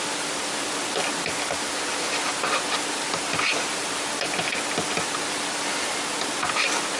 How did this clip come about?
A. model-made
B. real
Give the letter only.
B